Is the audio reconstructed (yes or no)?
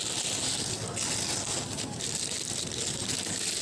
no